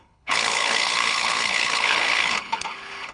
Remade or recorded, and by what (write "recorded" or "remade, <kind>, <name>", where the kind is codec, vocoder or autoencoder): remade, codec, HILCodec